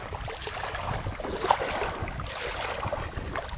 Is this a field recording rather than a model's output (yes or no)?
yes